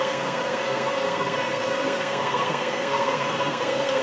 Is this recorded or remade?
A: remade